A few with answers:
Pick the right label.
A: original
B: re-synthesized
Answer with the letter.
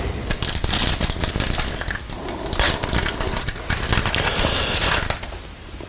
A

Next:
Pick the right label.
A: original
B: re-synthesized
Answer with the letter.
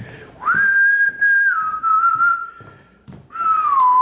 A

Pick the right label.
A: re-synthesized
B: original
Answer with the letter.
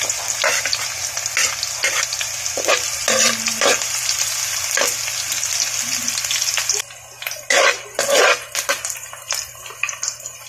B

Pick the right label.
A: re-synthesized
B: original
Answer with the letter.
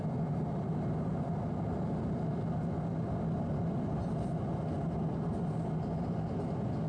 B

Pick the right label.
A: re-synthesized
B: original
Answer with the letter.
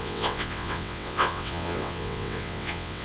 A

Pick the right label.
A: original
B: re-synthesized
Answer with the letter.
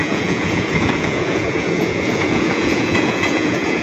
B